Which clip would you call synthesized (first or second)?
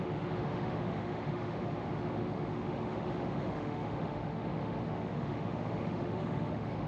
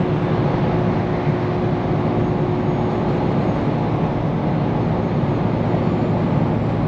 first